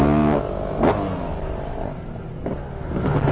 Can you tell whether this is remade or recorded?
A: recorded